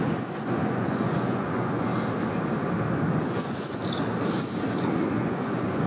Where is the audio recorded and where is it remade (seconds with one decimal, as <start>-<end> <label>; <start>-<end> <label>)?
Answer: 0.0-1.9 remade; 1.9-3.2 recorded; 3.2-3.8 remade; 3.8-5.1 recorded; 5.1-5.9 remade